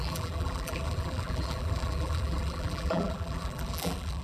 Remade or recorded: remade